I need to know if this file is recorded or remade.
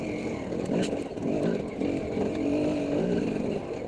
recorded